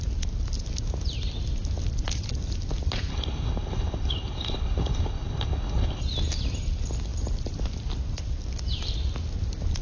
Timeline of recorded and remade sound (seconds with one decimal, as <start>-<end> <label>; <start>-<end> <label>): 0.0-3.1 recorded; 3.1-6.0 remade; 6.0-9.8 recorded

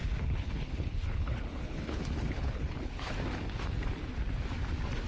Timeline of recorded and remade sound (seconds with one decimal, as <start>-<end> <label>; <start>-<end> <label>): 0.0-3.1 remade; 3.1-5.1 recorded